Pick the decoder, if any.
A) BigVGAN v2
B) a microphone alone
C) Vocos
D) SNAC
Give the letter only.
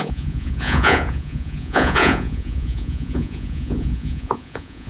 C